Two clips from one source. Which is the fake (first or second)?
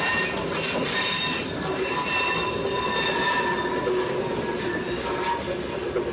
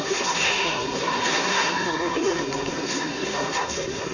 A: second